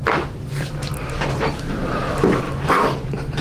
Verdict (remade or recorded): remade